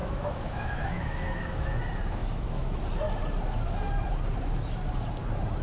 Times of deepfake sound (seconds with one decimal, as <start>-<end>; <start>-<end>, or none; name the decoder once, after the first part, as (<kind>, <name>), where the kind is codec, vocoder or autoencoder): 0.0-1.8 (autoencoder, DAC-VAE); 2.2-2.8